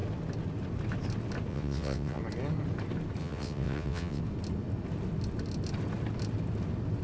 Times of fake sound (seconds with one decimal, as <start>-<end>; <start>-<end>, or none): 1.5-2.2; 3.2-4.2